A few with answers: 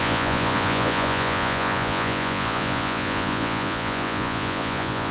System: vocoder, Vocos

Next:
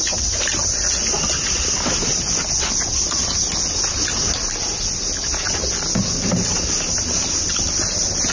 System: none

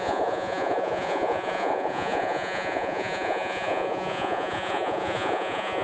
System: vocoder, Vocos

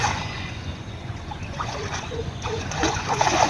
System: vocoder, Vocos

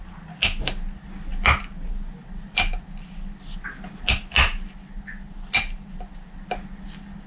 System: none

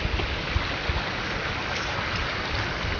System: none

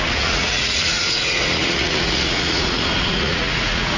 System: vocoder, Vocos